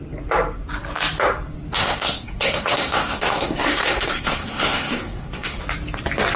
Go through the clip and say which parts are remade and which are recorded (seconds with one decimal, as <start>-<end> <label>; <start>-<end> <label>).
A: 0.0-1.8 recorded; 1.8-5.6 remade; 5.6-6.4 recorded